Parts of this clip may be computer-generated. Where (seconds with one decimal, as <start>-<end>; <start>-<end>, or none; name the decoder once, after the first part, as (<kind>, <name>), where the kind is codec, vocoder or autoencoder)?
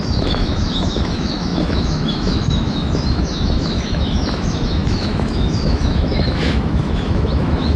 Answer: 0.0-7.8 (autoencoder, DAC-VAE)